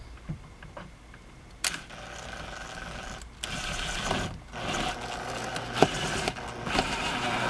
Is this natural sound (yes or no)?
yes